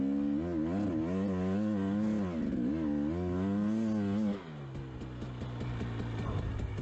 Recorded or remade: recorded